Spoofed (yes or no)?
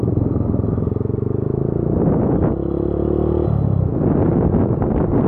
no